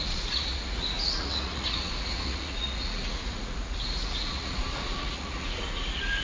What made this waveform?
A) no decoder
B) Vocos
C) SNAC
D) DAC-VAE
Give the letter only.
B